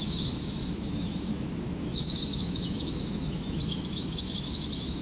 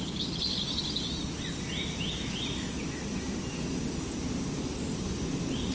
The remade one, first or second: first